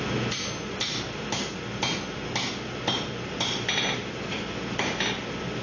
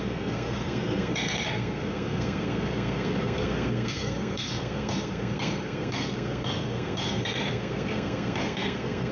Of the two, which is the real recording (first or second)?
first